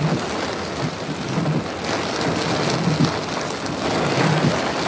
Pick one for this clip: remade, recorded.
recorded